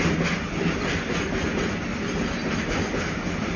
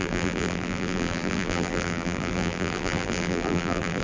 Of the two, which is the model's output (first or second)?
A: second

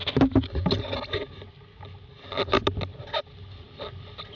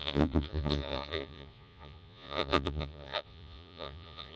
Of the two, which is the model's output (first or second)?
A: second